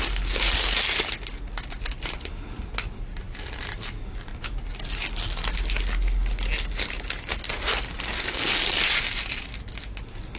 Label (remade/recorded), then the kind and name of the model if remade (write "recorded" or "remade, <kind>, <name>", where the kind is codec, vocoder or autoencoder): recorded